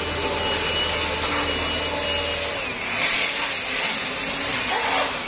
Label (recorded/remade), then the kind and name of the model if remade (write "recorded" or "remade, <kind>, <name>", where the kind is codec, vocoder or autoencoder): recorded